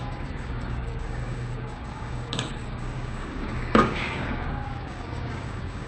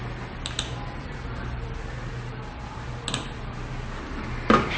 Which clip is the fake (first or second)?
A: first